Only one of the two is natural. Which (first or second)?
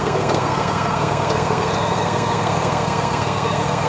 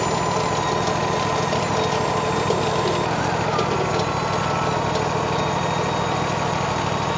second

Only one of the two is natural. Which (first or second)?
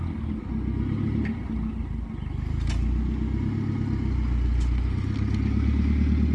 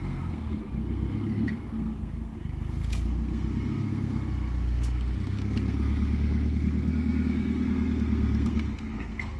first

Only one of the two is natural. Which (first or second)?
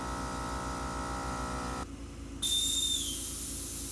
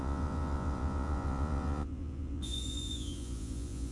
first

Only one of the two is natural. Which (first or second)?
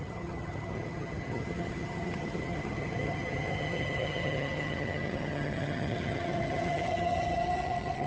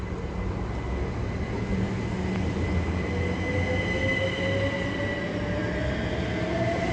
second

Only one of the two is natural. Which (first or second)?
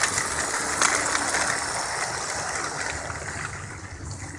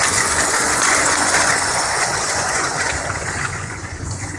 first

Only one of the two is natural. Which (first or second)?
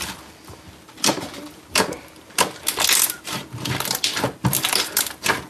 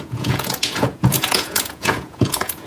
first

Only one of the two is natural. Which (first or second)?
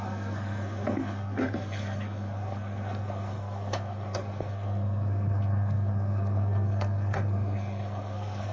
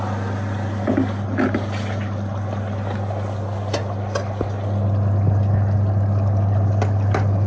second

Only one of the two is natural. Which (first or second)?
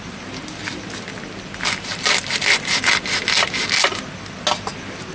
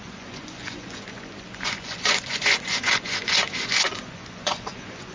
first